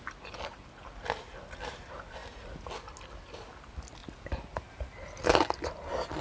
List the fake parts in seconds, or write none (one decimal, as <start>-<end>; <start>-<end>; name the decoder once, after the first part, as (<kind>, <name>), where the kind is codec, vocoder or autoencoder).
none